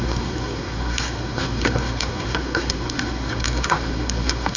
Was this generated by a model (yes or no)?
yes